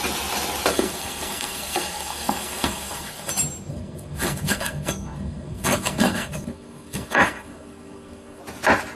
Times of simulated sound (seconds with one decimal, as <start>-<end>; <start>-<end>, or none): 0.7-3.3; 3.7-8.4